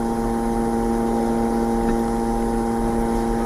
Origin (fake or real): real